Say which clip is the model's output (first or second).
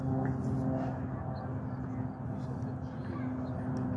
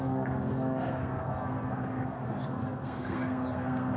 second